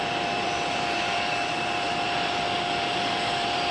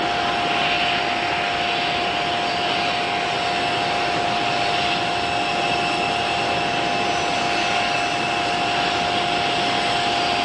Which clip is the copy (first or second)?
first